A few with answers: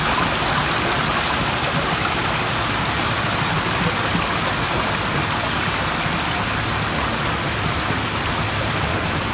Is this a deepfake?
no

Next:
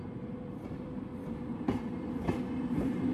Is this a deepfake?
yes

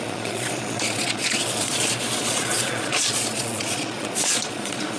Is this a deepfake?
yes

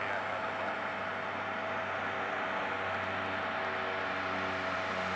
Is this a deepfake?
no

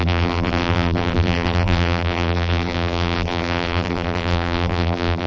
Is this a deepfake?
yes